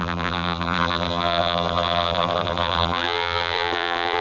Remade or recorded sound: remade